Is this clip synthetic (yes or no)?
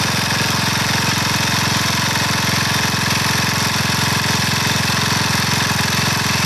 no